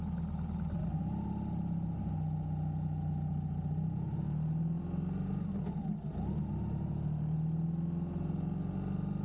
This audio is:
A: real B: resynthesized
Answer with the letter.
A